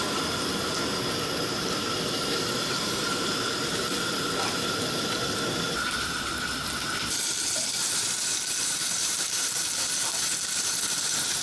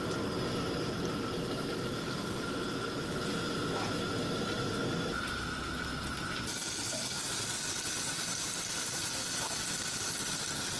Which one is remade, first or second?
first